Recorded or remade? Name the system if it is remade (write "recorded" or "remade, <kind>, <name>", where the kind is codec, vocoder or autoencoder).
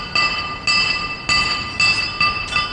recorded